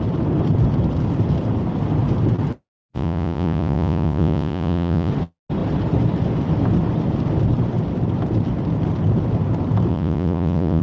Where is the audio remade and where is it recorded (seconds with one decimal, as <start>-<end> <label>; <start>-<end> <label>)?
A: 0.0-2.9 recorded; 2.9-5.1 remade; 5.1-9.9 recorded; 9.9-10.8 remade